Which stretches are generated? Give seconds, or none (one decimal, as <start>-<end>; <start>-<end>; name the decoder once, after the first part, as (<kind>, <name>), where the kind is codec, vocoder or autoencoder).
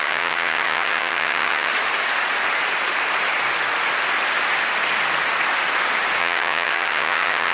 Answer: 0.0-1.7 (vocoder, HiFi-GAN); 6.2-7.5